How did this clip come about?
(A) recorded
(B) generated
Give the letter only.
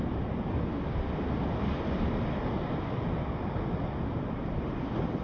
A